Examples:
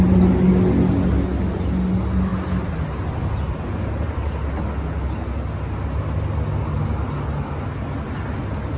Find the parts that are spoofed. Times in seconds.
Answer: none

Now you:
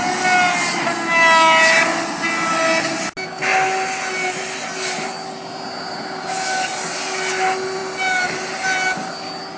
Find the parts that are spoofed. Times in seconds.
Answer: none

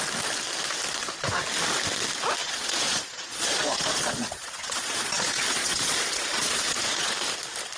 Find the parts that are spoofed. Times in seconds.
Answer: 2.4-7.1 (vocoder, Vocos)

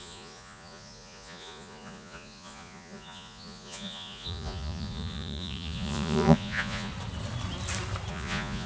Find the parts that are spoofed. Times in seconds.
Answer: 0.0-6.9 (vocoder, Vocos); 8.1-8.7

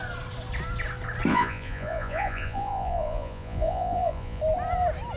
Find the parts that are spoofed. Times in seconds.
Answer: 1.3-4.4 (vocoder, Vocos)